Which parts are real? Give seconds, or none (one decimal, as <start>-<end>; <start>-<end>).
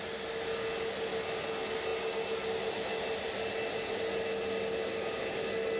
0.0-5.8